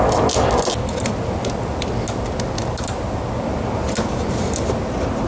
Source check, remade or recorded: recorded